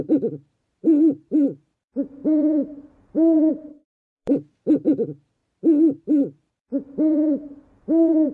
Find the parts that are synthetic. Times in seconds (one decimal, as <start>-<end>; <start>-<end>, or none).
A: 0.0-5.4; 6.0-8.3